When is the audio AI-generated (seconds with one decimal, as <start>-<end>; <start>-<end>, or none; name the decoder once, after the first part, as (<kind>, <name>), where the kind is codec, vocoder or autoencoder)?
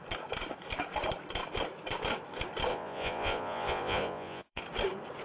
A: 2.7-4.6 (vocoder, Vocos)